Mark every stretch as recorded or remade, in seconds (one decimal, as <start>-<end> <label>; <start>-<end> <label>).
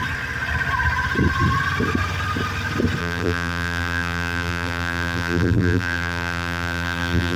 0.0-3.0 recorded; 3.0-7.4 remade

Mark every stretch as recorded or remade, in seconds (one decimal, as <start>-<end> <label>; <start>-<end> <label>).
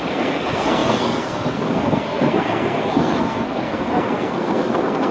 0.0-5.1 remade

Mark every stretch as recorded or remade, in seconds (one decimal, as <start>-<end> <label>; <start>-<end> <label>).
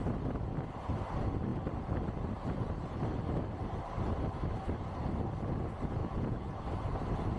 0.0-6.0 recorded; 6.0-6.6 remade; 6.6-7.4 recorded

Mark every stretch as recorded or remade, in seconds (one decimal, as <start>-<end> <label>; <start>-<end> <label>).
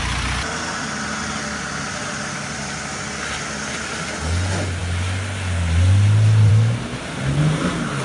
0.0-8.0 recorded